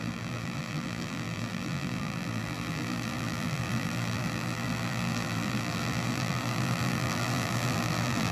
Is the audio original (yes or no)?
no